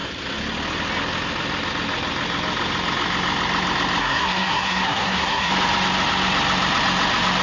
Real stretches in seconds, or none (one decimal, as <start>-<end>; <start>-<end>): 0.0-4.0; 5.5-7.4